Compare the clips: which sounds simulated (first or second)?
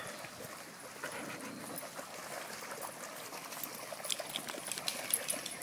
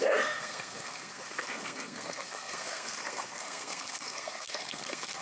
second